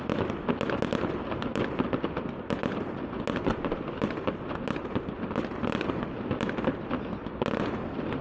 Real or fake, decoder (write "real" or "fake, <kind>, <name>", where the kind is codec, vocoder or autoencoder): real